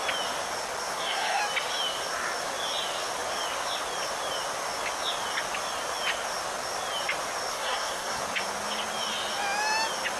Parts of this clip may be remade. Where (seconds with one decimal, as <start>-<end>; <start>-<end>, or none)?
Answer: 0.9-1.4; 7.5-8.2